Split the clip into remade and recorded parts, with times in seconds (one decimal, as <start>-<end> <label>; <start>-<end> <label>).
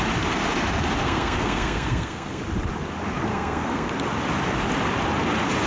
0.0-1.0 recorded; 1.0-2.4 remade; 2.4-3.3 recorded; 3.3-3.9 remade; 3.9-5.7 recorded